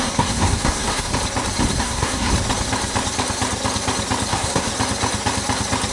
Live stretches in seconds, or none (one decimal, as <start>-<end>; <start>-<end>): 1.1-1.8; 2.3-4.3; 4.7-5.9